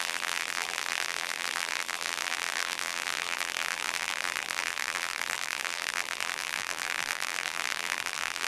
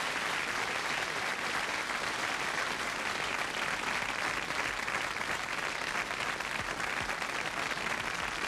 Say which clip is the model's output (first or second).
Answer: first